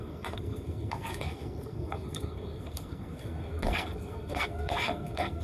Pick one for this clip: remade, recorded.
remade